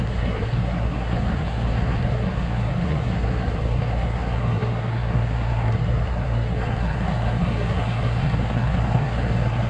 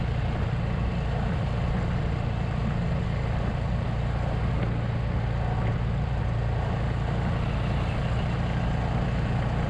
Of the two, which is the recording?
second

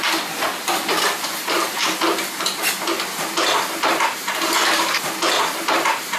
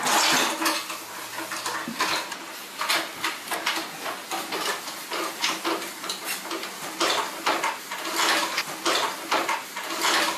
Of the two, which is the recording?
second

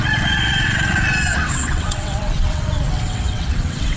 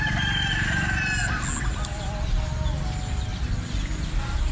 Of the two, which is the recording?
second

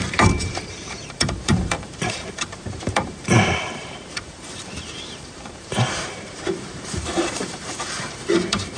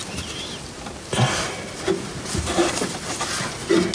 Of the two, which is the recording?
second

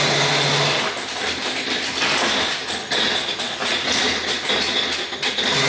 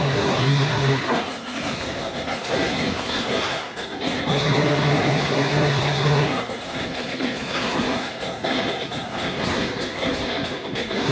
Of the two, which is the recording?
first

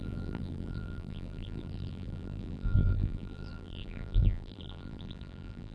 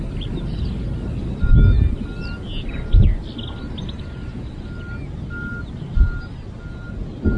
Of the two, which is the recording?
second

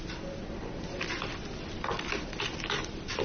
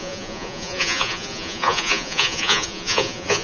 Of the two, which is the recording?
first